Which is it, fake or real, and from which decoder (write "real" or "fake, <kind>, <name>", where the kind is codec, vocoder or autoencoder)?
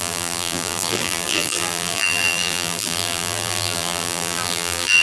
fake, vocoder, BigVGAN v2